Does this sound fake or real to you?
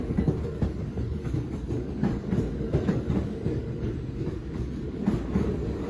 fake